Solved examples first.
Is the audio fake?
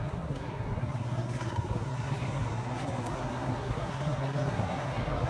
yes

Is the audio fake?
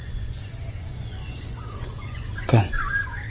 yes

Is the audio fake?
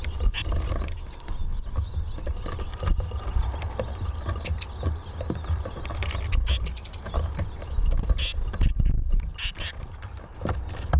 no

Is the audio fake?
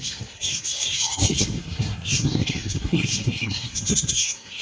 yes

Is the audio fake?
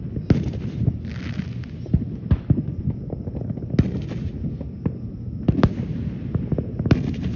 no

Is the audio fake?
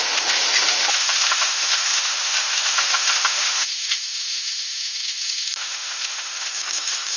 yes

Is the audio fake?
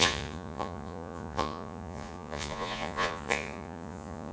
yes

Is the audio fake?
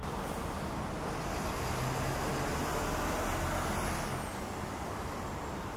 no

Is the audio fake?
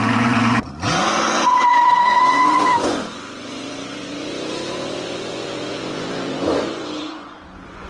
yes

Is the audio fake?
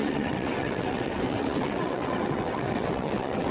yes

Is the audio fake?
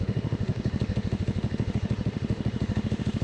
yes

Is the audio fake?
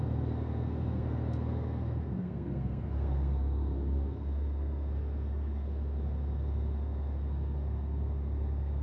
yes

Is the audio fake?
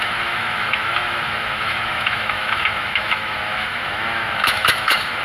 yes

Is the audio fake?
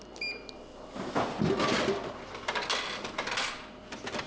no